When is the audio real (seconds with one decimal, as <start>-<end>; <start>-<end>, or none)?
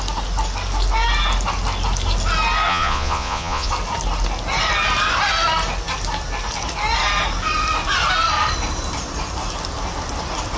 0.0-2.7; 3.7-10.6